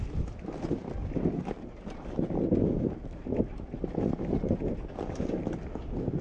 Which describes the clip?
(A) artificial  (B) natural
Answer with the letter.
B